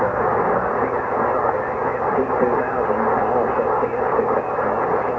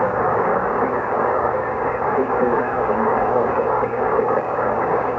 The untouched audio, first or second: first